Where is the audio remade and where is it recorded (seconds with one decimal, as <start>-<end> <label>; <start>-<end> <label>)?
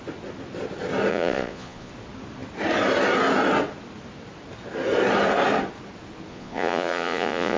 0.0-1.1 recorded; 1.1-1.9 remade; 1.9-6.3 recorded; 6.3-7.6 remade